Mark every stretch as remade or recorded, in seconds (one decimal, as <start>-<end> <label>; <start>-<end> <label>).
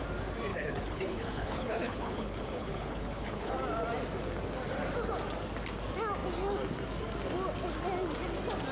0.0-0.5 recorded; 0.5-3.5 remade; 3.5-8.7 recorded